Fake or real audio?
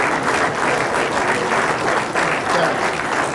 real